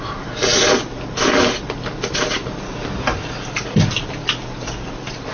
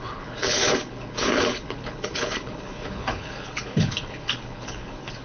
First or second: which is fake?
second